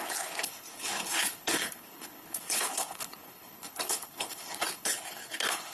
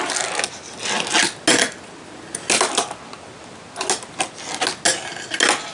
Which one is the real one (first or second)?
second